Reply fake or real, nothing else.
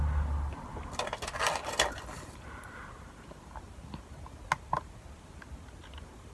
real